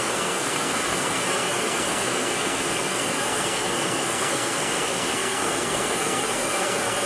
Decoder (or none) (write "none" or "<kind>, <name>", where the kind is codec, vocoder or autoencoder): codec, SNAC